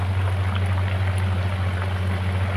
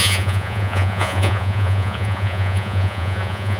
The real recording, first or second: first